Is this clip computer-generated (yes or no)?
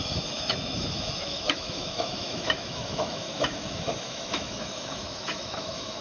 yes